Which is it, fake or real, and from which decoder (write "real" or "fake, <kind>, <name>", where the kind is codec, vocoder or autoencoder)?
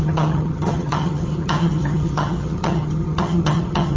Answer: fake, vocoder, HiFi-GAN